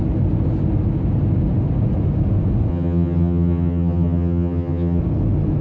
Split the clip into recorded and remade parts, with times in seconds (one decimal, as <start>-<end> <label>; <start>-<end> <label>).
0.0-2.7 recorded; 2.7-5.0 remade; 5.0-5.6 recorded